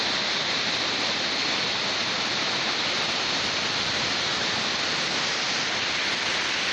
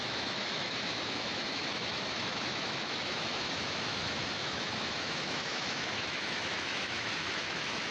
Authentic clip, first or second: first